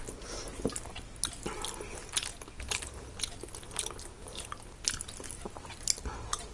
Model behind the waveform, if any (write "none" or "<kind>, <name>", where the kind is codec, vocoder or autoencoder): none